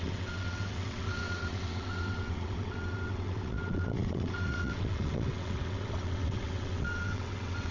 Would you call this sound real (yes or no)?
no